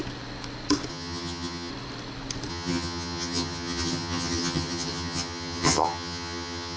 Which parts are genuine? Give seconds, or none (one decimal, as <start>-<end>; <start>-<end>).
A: 0.0-0.9; 1.7-2.5